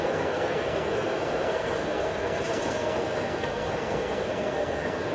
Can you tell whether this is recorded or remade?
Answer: remade